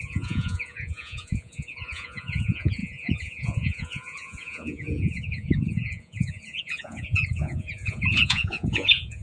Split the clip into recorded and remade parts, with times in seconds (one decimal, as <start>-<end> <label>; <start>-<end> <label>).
0.0-9.2 remade